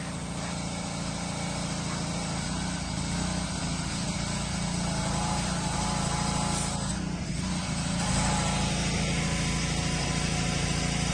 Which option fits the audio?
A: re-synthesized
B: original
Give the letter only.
B